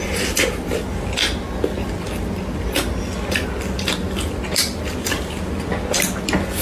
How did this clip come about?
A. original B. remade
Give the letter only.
A